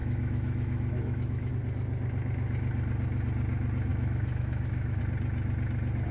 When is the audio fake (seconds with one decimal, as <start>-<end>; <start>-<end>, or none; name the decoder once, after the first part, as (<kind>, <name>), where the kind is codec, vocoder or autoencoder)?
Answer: 0.0-1.5 (autoencoder, DAC-VAE); 3.9-5.0